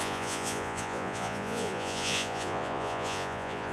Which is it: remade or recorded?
remade